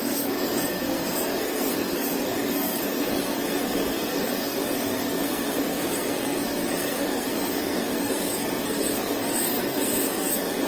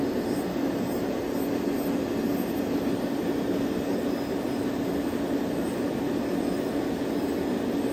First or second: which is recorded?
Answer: second